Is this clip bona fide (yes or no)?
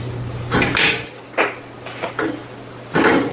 yes